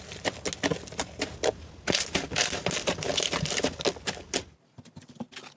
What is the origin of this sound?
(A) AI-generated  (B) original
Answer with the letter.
B